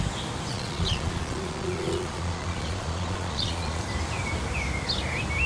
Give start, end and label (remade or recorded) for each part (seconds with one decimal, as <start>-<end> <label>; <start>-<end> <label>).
0.0-0.5 recorded; 0.5-3.8 remade; 3.8-5.5 recorded